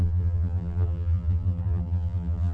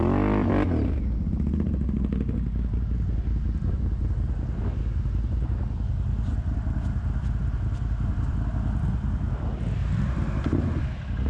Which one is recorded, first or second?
second